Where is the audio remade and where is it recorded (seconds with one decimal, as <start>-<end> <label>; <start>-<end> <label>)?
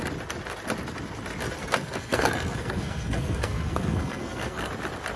0.0-1.6 recorded; 1.6-4.7 remade; 4.7-5.2 recorded